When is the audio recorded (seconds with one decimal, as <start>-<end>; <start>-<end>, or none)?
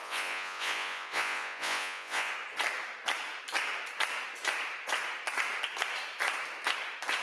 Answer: 2.3-7.2